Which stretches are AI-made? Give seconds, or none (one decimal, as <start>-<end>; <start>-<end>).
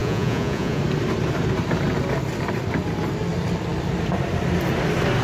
0.0-0.8